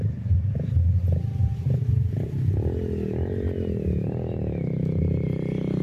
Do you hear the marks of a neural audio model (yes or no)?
no